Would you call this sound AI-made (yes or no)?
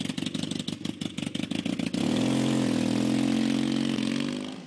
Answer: no